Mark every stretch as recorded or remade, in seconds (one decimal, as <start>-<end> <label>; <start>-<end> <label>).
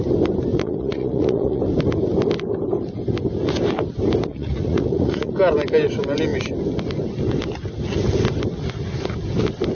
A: 0.0-0.5 recorded; 0.5-1.6 remade; 1.6-4.3 recorded; 4.3-5.3 remade; 5.3-9.7 recorded